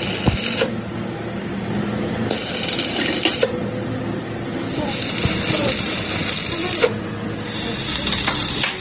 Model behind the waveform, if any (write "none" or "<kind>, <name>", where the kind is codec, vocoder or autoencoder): none